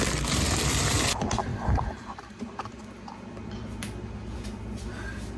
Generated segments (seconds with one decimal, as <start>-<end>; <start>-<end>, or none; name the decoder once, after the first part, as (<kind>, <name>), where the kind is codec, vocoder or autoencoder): 1.5-2.4 (vocoder, BigVGAN v2)